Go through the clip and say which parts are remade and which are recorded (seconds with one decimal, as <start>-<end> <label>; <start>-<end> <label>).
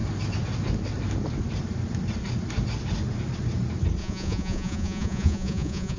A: 0.0-4.0 recorded; 4.0-6.0 remade